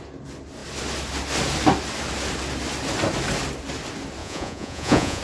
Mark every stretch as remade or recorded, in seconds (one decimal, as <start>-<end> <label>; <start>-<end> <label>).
0.0-4.2 recorded; 4.2-5.2 remade